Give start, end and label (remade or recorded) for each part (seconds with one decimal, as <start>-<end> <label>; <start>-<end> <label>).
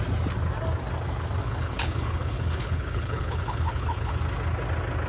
0.0-1.4 recorded; 1.4-4.1 remade; 4.1-5.1 recorded